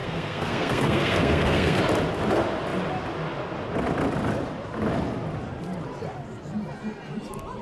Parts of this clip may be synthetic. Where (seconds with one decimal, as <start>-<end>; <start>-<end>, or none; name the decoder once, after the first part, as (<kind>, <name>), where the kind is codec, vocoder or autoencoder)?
0.0-1.8 (codec, SNAC)

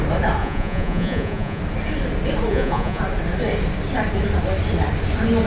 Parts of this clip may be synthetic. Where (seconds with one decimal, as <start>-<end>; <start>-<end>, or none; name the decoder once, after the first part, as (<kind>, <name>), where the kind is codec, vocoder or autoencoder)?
0.4-1.6 (vocoder, Vocos); 2.5-3.0

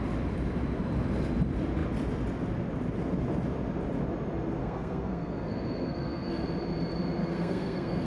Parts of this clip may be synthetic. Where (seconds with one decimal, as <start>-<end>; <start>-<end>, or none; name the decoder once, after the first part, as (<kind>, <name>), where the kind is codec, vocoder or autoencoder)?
4.6-6.3 (codec, SNAC); 7.2-8.1

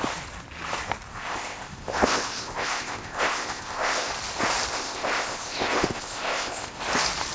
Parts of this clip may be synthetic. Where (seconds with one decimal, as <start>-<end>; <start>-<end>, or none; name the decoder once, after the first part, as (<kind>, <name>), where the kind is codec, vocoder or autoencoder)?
1.1-4.1 (codec, ZipCodec); 4.7-6.8

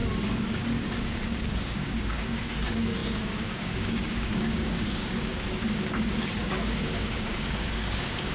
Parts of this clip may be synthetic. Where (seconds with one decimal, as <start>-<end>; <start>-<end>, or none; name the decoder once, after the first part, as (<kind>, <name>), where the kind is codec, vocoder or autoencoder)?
0.0-8.3 (codec, DAC)

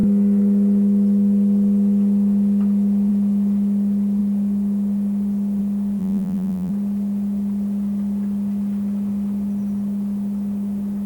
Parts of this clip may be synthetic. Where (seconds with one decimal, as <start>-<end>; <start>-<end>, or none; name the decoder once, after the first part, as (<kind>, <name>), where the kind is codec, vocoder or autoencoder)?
6.0-6.7 (vocoder, BigVGAN v2)

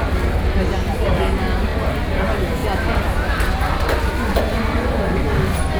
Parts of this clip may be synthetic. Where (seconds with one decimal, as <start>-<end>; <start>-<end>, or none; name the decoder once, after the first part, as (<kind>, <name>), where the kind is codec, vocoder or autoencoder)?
none

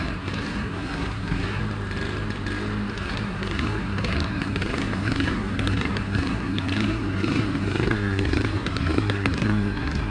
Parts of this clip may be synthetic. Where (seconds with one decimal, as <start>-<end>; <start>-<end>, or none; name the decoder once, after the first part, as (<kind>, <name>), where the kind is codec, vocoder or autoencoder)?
0.0-1.6 (codec, SNAC); 2.9-10.1